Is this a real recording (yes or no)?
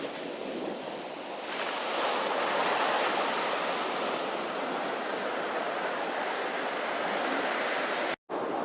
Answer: yes